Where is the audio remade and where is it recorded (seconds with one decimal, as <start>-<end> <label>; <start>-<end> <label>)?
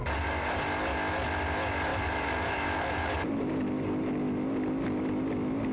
0.0-1.9 recorded; 1.9-3.5 remade; 3.5-5.7 recorded